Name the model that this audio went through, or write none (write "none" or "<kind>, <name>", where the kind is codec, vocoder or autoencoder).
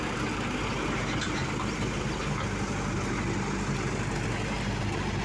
none